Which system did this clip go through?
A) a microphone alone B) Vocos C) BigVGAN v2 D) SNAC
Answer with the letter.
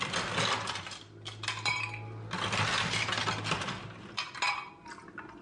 A